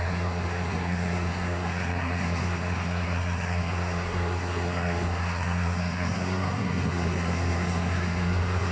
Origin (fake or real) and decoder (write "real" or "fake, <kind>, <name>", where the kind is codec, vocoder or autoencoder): fake, codec, SNAC